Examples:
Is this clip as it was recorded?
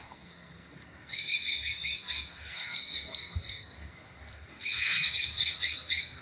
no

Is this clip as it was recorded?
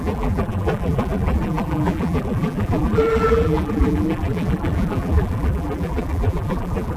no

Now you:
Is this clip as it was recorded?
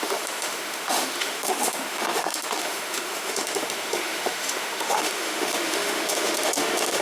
no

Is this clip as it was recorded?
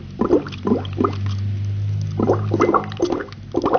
yes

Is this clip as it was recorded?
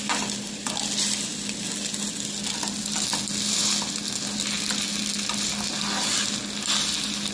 yes